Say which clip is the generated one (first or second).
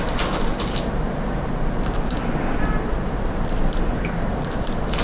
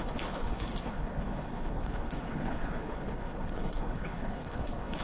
second